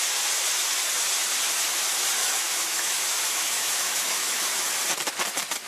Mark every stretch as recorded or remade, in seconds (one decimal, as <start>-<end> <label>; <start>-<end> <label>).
0.0-2.2 recorded; 2.2-4.7 remade; 4.7-5.7 recorded